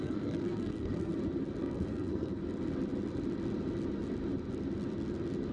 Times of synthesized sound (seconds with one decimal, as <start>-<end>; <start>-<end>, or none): 0.0-1.1; 1.6-2.4

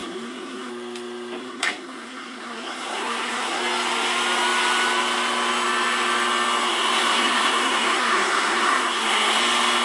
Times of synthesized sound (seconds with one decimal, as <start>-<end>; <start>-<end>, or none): 0.0-0.7; 1.4-3.6; 6.7-9.4

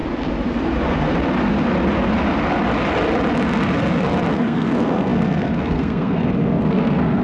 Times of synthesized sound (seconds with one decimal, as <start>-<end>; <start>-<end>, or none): 4.3-7.2

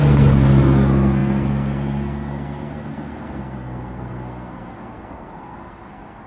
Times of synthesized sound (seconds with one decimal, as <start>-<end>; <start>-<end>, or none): 0.0-6.3

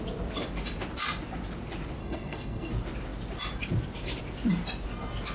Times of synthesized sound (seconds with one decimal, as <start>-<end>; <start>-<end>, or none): 2.0-2.7

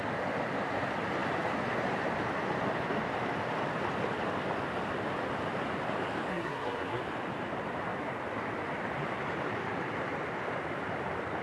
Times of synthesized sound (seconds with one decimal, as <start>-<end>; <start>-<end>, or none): 6.3-7.0